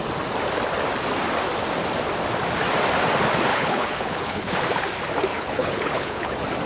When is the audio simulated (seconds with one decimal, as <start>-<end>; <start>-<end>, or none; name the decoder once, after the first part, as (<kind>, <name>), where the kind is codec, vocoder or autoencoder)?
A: 3.5-4.5 (codec, HILCodec); 5.3-6.3